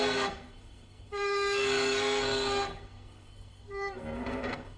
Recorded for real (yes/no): no